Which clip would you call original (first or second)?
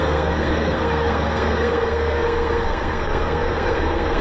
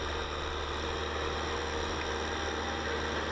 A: second